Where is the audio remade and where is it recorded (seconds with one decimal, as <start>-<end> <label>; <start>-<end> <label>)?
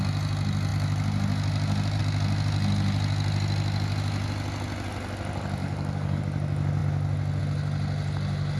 0.0-5.6 recorded; 5.6-6.2 remade; 6.2-8.6 recorded